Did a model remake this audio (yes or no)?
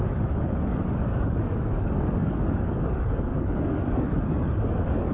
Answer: yes